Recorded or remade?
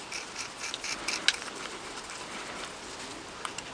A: recorded